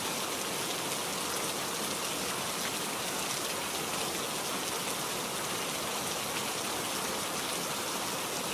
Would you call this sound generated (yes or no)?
no